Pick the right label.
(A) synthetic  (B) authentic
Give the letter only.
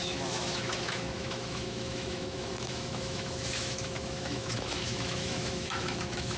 A